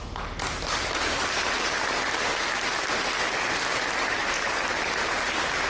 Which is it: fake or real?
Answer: real